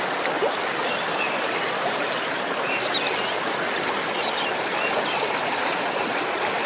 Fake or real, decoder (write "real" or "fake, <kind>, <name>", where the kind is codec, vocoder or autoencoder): fake, vocoder, BigVGAN v2